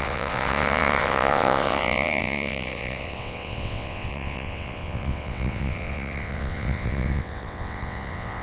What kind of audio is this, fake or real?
fake